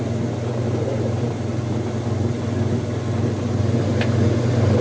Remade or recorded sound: recorded